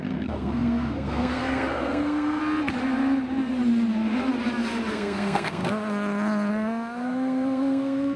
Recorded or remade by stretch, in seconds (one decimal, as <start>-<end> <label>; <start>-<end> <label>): 0.0-2.4 remade; 2.4-4.9 recorded; 4.9-5.6 remade; 5.6-6.5 recorded; 6.5-8.2 remade